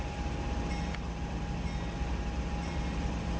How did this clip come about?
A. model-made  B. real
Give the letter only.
B